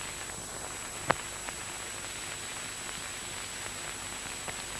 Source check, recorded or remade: recorded